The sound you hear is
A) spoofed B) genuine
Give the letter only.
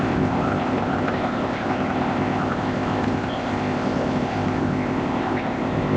A